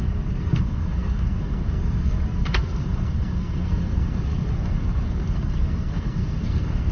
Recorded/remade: remade